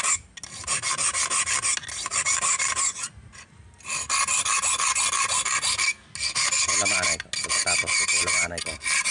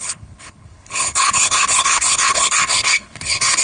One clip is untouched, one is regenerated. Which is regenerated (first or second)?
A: second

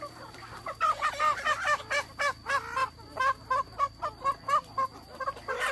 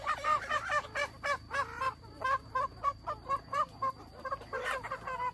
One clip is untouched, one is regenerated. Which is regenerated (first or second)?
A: second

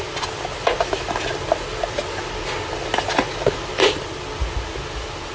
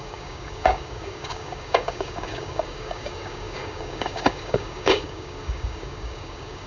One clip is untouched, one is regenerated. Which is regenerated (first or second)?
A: second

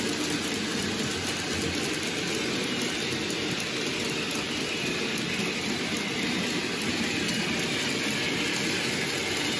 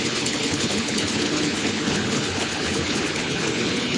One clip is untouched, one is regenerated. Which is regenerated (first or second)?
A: second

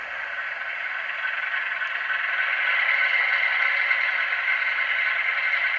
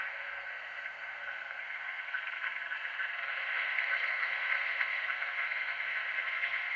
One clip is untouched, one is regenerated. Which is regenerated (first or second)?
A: second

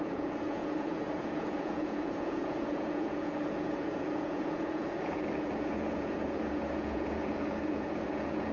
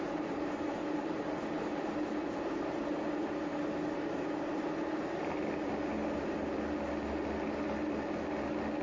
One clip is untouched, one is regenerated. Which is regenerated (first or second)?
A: first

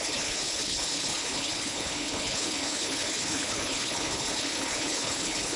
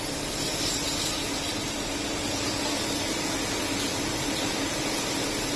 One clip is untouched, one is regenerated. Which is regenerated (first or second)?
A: first